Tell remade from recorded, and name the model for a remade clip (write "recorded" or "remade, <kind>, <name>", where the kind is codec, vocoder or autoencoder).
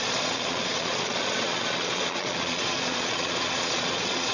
remade, vocoder, Vocos